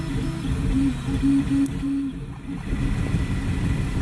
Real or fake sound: real